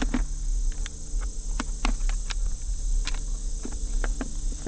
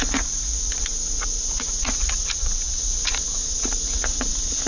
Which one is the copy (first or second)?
second